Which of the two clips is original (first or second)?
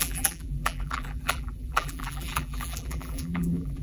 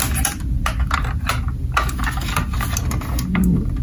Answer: second